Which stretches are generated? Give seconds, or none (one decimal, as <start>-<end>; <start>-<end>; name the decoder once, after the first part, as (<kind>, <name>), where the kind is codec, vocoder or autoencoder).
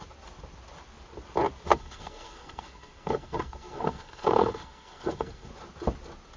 1.7-5.5 (codec, SNAC)